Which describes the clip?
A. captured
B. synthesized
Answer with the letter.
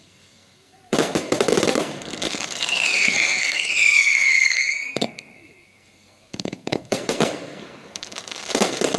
B